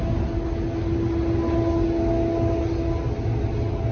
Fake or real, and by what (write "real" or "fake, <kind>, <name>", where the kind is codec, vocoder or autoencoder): real